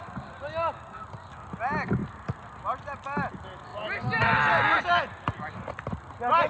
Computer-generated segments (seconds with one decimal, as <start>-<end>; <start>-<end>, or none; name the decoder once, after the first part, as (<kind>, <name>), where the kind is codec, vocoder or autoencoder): none